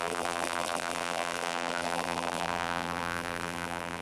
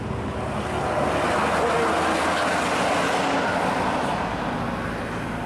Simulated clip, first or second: first